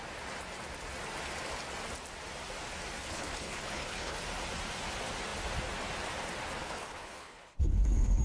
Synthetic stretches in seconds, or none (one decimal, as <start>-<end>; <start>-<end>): 3.0-4.2; 6.6-8.2